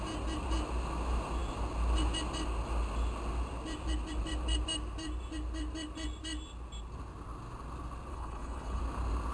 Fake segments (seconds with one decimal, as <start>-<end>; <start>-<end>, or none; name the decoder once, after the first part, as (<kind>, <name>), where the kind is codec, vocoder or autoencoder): 8.1-8.8 (codec, HILCodec)